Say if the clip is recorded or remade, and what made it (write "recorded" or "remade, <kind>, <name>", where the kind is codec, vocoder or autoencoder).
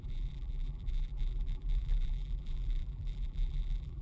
remade, vocoder, BigVGAN v2